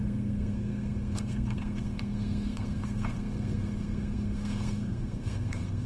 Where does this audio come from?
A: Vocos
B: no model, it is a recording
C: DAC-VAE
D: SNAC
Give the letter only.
D